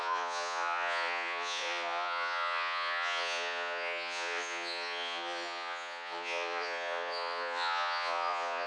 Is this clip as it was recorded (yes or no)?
no